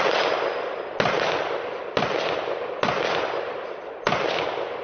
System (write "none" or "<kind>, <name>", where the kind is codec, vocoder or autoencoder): none